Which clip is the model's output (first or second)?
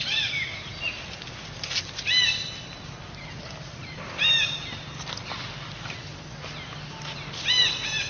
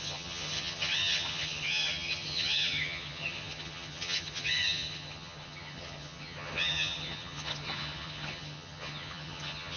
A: second